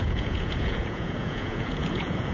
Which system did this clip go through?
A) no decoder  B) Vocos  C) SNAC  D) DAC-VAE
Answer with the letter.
B